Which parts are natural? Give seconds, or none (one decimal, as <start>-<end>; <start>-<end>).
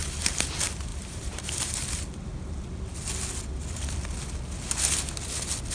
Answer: 0.0-0.9; 2.0-5.7